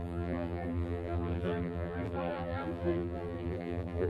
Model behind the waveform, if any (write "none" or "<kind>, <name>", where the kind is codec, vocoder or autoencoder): vocoder, BigVGAN v2